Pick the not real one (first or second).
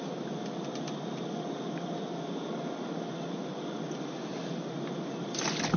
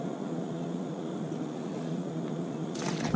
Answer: second